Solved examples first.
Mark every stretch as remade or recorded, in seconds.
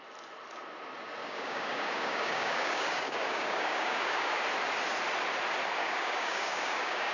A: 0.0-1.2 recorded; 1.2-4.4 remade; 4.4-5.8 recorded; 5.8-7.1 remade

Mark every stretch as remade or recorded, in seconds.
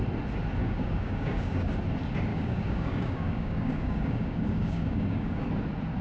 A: 0.0-0.6 recorded; 0.6-1.7 remade; 1.7-2.3 recorded; 2.3-5.5 remade; 5.5-6.0 recorded